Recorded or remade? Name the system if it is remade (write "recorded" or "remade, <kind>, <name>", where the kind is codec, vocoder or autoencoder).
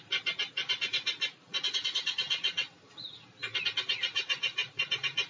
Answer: recorded